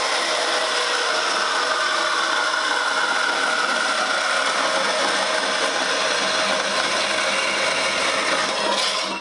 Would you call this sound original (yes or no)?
yes